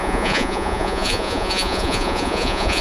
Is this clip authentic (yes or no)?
no